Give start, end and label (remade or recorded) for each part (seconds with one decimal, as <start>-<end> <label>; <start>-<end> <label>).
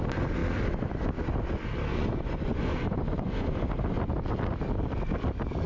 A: 0.0-1.9 recorded; 1.9-3.7 remade; 3.7-5.7 recorded